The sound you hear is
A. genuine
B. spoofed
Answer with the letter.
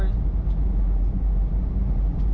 A